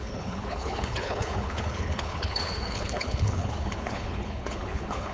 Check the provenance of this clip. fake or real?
fake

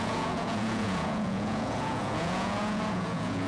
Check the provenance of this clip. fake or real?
fake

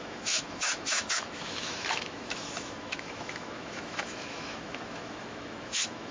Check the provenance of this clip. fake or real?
fake